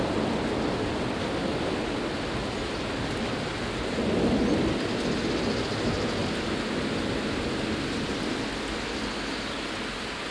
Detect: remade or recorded recorded